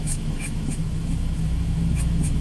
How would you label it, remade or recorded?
remade